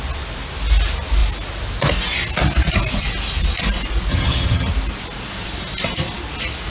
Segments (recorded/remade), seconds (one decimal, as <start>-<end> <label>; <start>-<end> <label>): 0.0-4.1 recorded; 4.1-4.7 remade; 4.7-6.7 recorded